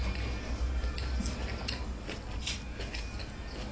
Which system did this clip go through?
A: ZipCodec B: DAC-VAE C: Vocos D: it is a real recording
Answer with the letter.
D